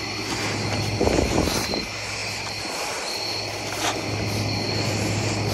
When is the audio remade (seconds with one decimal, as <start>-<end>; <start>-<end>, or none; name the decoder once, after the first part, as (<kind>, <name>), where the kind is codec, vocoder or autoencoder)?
none